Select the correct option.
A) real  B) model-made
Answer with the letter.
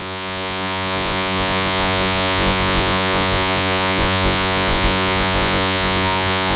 B